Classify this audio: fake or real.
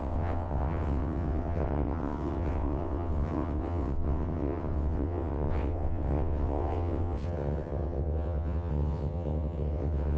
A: fake